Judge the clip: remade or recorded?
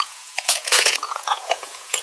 remade